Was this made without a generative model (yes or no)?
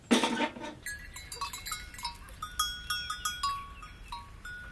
yes